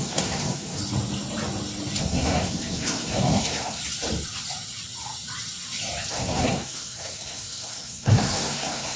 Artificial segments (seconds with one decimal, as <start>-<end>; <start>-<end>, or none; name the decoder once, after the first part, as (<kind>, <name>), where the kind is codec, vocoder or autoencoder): 0.0-0.8 (codec, SNAC); 2.0-3.8; 6.1-9.0